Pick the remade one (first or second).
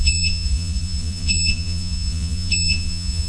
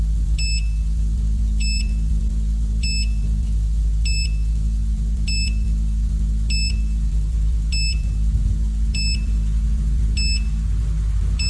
first